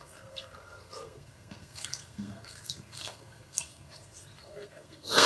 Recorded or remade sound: remade